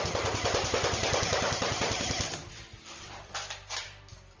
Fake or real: real